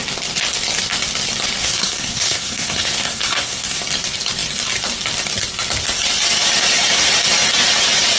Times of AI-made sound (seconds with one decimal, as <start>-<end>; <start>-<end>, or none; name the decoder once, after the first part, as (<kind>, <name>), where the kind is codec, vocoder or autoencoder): 1.6-3.8 (codec, SNAC)